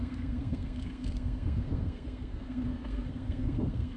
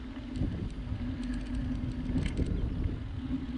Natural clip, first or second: second